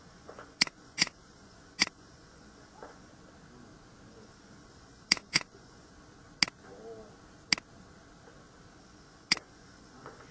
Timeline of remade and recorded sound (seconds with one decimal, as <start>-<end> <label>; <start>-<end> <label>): 0.0-3.1 remade; 3.1-4.1 recorded; 4.1-5.9 remade; 5.9-8.8 recorded; 8.8-10.3 remade